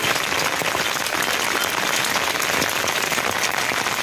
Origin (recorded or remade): recorded